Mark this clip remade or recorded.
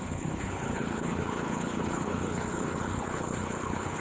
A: remade